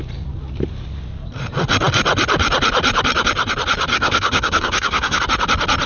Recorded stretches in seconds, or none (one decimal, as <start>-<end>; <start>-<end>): 0.0-3.9; 5.2-5.9